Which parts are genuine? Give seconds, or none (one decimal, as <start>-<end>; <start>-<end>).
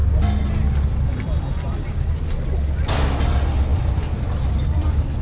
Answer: 0.0-5.2